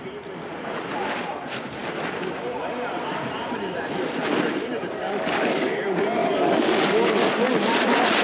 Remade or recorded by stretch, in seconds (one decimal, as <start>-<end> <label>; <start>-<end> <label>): 0.0-5.0 recorded; 5.0-5.8 remade; 5.8-6.2 recorded; 6.2-7.3 remade; 7.3-8.2 recorded